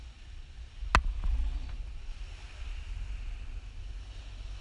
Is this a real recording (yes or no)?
yes